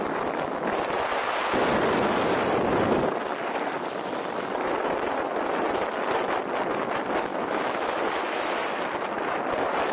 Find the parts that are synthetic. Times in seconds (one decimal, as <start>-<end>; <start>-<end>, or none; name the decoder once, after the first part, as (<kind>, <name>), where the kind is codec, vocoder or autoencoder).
7.3-8.0 (autoencoder, DAC-VAE)